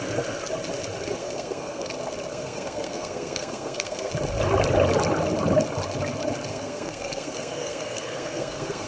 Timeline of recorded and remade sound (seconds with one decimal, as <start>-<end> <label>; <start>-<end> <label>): 0.0-1.2 recorded; 1.2-1.9 remade; 1.9-2.3 recorded; 2.3-4.1 remade; 4.1-6.5 recorded; 6.5-8.9 remade